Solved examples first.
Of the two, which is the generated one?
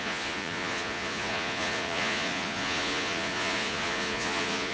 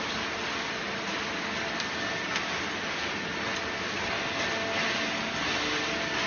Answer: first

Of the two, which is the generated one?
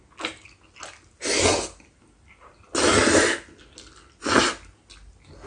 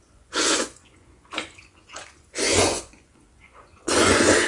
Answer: second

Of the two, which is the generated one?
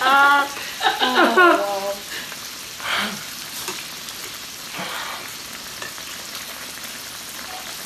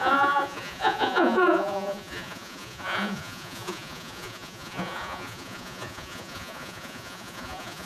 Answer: second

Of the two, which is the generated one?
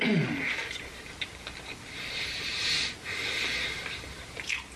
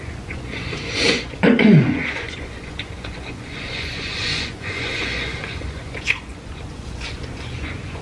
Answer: second